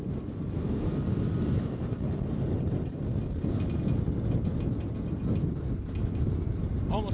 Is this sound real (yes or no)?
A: yes